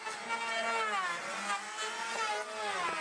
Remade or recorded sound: recorded